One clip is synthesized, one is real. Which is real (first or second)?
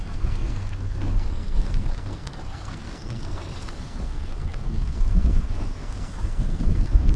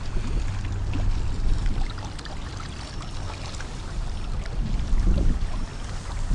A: second